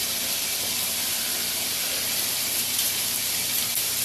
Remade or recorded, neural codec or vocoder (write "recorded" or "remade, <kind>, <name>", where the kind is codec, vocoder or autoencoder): remade, vocoder, BigVGAN v2